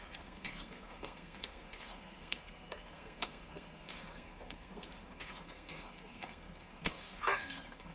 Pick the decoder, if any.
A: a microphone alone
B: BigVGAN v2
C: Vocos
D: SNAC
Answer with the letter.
D